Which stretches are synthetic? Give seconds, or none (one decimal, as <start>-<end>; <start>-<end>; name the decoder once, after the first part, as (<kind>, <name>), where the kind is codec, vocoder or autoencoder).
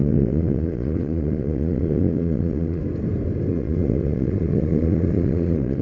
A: 0.0-2.8 (vocoder, Vocos); 3.5-5.8